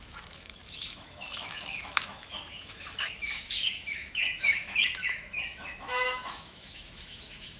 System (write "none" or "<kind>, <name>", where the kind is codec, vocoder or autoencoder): autoencoder, DAC-VAE